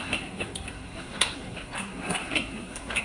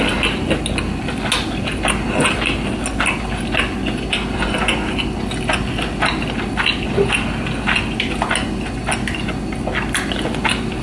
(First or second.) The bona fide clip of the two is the second